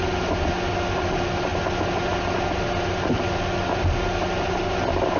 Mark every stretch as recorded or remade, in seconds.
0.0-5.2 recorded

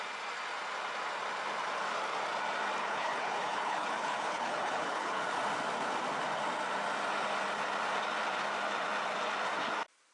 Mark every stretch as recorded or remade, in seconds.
0.0-2.8 recorded; 2.8-5.2 remade; 5.2-10.1 recorded

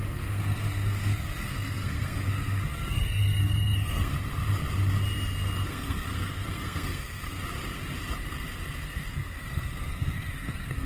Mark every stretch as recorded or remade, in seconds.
0.0-4.1 remade; 4.1-5.7 recorded; 5.7-7.4 remade; 7.4-9.1 recorded; 9.1-10.9 remade

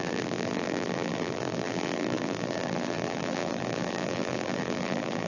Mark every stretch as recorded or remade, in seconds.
0.0-5.3 remade